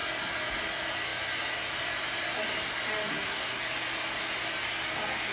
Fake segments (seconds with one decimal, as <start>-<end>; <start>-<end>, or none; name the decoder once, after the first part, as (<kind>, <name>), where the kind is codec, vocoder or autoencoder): 3.1-3.6 (codec, SNAC)

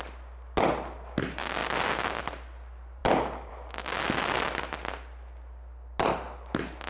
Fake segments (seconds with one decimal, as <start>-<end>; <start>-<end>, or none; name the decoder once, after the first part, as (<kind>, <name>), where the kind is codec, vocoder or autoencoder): none

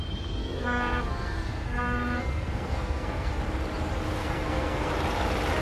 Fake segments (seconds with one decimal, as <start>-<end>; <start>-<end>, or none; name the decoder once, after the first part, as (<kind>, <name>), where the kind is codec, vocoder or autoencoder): 0.4-3.4 (codec, SNAC); 4.2-4.9

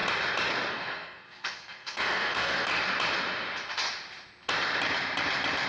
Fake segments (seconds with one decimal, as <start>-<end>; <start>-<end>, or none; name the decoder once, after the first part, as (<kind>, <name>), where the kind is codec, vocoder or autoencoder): 0.7-2.7 (codec, SNAC)